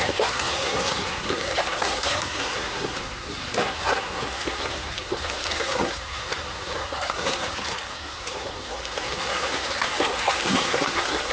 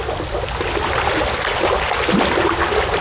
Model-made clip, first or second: first